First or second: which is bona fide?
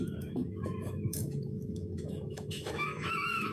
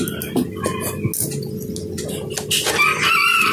second